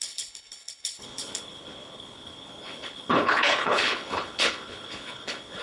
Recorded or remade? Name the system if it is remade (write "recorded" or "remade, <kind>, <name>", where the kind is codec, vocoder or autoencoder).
remade, codec, HILCodec